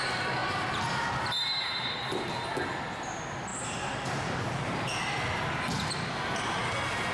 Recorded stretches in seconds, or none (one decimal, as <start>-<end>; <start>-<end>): 0.0-3.5; 4.9-7.1